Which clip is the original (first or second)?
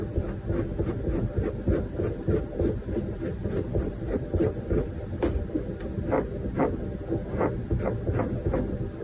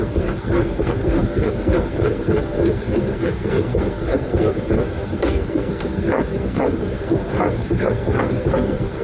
first